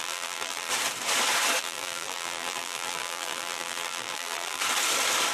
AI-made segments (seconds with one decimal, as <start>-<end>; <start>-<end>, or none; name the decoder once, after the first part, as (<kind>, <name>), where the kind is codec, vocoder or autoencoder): 0.0-0.7 (vocoder, BigVGAN v2); 1.6-4.6